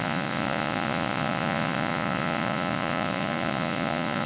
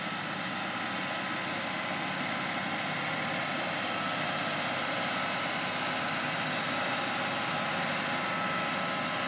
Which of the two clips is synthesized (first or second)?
first